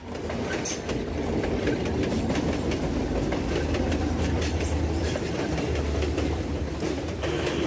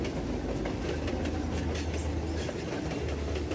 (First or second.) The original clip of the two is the second